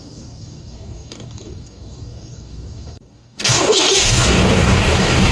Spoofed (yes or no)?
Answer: yes